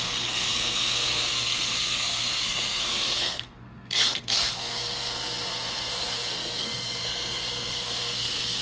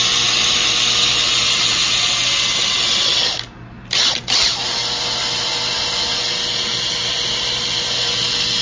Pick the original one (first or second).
second